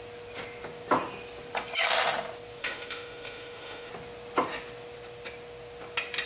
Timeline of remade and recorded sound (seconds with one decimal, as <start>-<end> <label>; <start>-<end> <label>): 0.0-2.6 recorded; 2.6-3.9 remade; 3.9-6.3 recorded